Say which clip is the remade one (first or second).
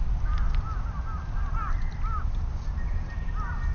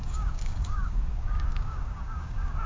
second